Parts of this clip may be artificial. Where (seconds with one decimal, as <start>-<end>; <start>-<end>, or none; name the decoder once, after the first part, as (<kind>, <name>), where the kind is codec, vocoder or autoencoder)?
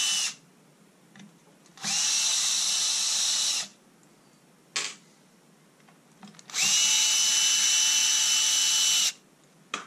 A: none